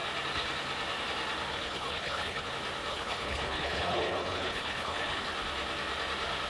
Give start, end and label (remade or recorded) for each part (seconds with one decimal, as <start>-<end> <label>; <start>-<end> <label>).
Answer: 0.0-1.5 recorded; 1.5-2.5 remade; 2.5-2.9 recorded; 2.9-5.2 remade; 5.2-6.5 recorded